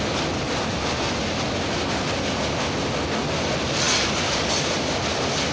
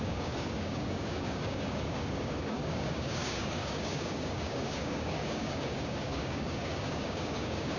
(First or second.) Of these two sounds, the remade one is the second